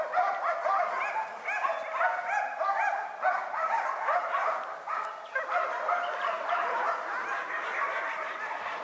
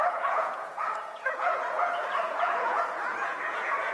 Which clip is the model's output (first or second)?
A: second